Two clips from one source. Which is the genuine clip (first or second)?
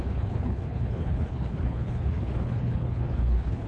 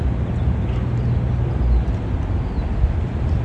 second